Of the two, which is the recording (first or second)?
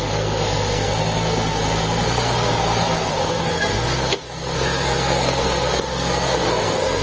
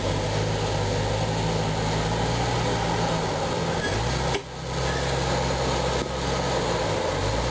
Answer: second